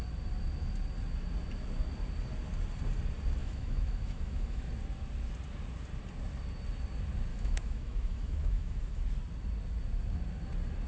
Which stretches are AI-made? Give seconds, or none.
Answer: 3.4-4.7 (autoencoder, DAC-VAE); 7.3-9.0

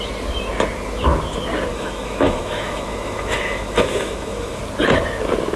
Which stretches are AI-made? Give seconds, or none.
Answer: 1.7-4.6 (autoencoder, DAC-VAE)